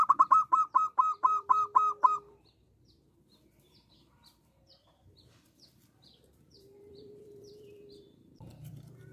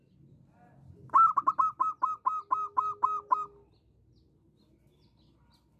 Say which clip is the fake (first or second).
first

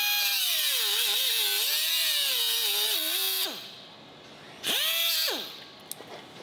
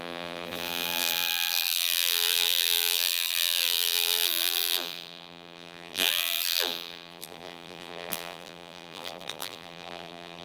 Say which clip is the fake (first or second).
second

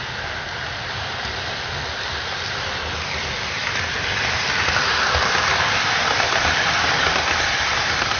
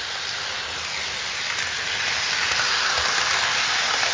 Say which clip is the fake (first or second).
first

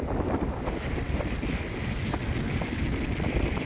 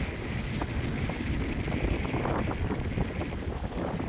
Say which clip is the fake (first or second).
second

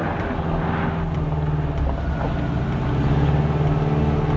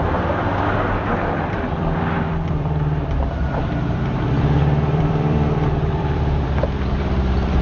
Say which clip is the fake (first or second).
second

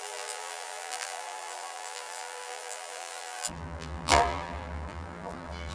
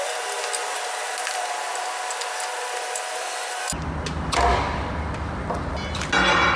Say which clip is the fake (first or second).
first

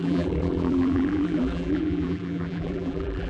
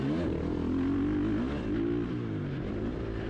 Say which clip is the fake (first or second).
first